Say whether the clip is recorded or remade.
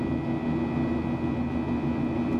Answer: recorded